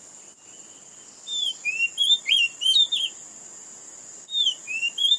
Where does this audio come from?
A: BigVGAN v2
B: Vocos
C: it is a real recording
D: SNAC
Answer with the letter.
C